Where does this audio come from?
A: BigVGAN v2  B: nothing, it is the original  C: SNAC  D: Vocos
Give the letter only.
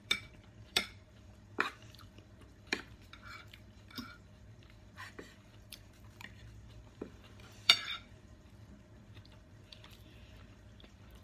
A